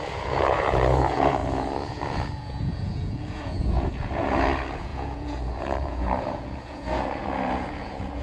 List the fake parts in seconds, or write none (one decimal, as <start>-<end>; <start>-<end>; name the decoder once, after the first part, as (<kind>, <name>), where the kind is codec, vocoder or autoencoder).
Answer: 0.0-8.2 (vocoder, Vocos)